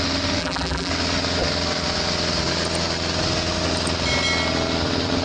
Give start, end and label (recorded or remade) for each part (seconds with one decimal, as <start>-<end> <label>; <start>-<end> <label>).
0.0-0.4 recorded; 0.4-0.9 remade; 0.9-5.2 recorded